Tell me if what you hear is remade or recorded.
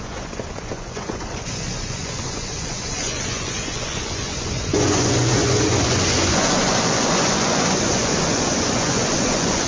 remade